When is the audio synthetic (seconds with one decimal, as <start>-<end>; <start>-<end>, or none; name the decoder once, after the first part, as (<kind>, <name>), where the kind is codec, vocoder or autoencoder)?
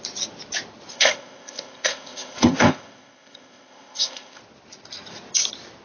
0.9-4.4 (codec, ZipCodec)